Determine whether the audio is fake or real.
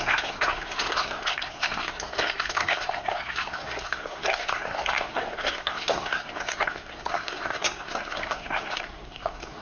fake